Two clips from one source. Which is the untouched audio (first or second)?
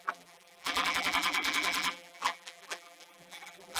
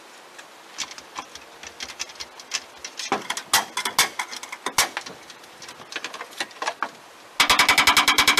second